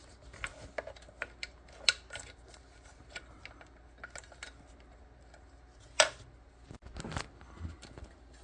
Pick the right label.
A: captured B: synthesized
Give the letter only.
A